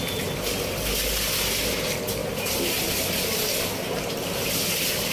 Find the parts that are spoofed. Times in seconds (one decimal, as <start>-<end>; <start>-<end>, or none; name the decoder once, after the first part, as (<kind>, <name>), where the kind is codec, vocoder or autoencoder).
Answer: none